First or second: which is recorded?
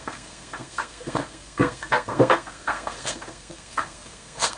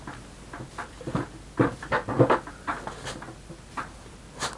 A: second